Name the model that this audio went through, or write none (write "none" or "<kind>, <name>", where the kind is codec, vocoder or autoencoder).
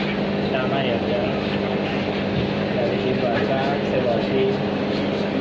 none